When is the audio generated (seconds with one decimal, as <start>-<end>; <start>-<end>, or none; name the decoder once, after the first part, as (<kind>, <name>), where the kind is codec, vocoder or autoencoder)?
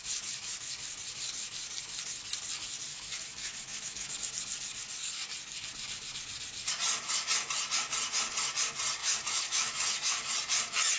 2.9-4.1 (autoencoder, DAC-VAE); 9.0-10.3